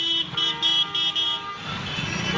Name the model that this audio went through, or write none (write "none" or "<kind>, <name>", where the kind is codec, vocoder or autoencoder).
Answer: none